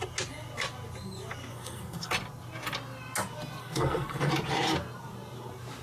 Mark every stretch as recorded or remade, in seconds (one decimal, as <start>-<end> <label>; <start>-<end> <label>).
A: 0.0-1.5 recorded; 1.5-2.1 remade; 2.1-3.6 recorded; 3.6-4.3 remade; 4.3-5.8 recorded